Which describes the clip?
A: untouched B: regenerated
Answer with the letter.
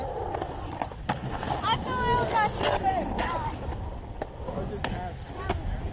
A